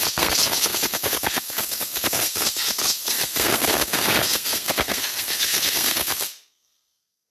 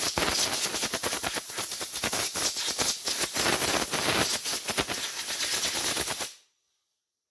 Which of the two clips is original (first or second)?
second